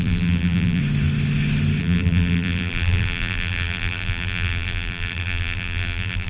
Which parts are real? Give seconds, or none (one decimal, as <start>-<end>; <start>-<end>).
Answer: 0.8-1.8